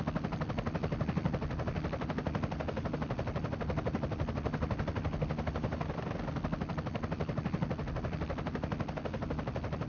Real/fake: real